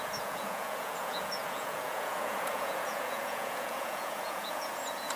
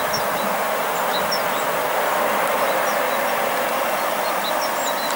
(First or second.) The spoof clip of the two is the first